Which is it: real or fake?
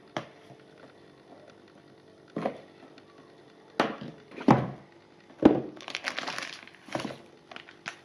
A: real